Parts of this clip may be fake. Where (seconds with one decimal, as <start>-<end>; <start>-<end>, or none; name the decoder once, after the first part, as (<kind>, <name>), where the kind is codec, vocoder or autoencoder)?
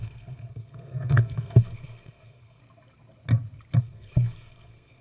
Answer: 0.0-2.6 (codec, SNAC); 3.8-5.0